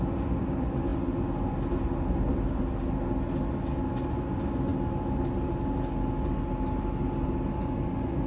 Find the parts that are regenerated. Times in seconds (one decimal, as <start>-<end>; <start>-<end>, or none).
none